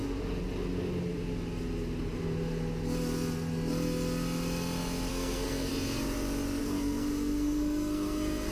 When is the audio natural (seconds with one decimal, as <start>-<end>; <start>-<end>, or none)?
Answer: 0.0-5.1; 5.7-6.6